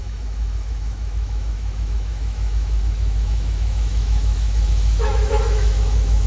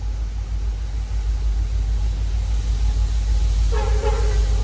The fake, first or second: first